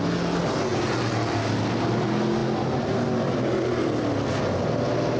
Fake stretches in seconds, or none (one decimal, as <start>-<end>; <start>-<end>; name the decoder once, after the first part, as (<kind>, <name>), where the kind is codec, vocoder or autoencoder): none